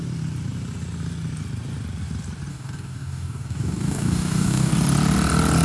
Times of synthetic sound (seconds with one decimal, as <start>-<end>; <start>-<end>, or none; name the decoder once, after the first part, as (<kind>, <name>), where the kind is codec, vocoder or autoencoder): 2.5-4.7 (codec, DAC)